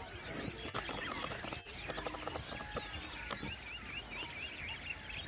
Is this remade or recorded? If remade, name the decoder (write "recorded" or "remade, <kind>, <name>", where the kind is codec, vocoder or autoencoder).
recorded